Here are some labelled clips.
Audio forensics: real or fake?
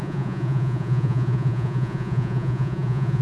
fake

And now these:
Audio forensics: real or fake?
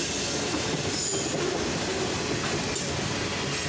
real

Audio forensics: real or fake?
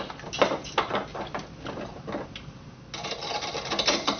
real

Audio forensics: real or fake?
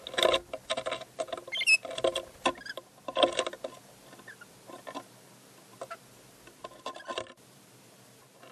real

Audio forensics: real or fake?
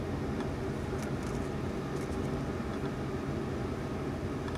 real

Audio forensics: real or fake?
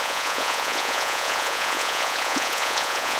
fake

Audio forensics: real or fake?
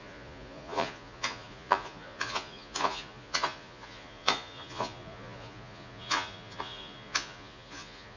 fake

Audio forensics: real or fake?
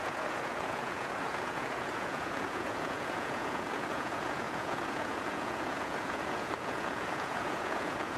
fake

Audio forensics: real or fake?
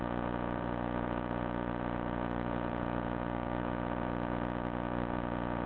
fake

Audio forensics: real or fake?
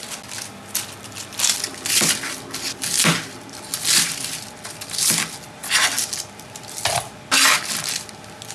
real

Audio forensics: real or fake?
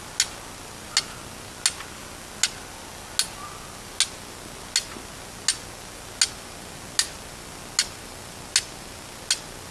real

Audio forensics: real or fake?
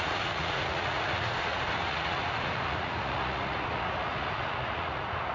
fake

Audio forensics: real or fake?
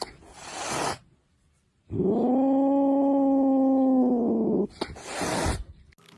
real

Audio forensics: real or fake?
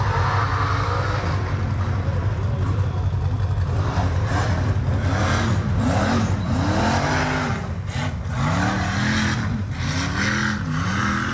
real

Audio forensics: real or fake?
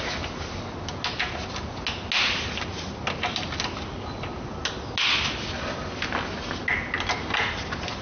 real